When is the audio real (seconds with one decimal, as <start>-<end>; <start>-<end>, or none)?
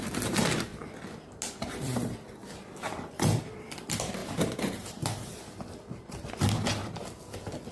0.7-1.5; 2.4-3.4; 4.2-6.1; 6.8-7.7